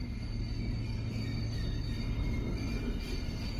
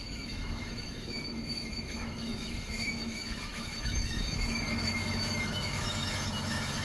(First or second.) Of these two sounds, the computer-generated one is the second